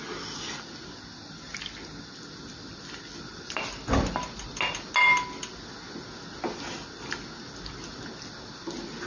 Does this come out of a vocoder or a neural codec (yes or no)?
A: no